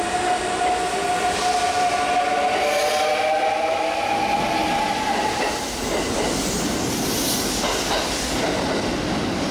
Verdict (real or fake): real